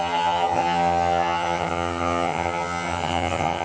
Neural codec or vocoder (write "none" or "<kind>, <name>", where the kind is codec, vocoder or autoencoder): vocoder, HiFi-GAN